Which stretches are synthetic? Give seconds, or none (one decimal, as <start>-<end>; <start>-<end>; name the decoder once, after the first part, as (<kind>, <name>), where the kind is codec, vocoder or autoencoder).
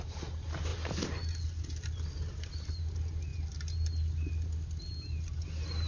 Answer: none